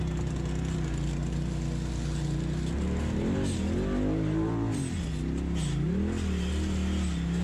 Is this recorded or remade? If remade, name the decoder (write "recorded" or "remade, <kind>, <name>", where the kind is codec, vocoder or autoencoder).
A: recorded